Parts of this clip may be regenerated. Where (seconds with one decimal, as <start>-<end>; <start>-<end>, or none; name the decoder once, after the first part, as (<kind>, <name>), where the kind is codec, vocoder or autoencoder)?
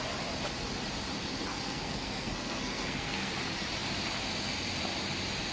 1.5-3.3 (codec, SNAC)